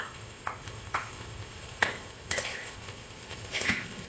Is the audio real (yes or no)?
no